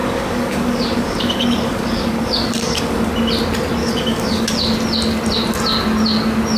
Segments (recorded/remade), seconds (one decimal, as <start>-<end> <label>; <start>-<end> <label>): 0.0-3.1 remade; 3.1-3.8 recorded; 3.8-4.5 remade; 4.5-6.6 recorded